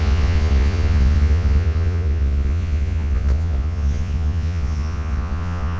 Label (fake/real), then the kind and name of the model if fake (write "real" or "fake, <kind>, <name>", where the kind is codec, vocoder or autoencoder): fake, vocoder, Vocos